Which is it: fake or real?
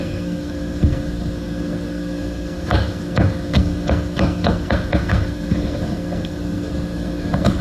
fake